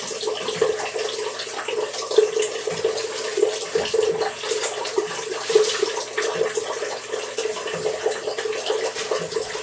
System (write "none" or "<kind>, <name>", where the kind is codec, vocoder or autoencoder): none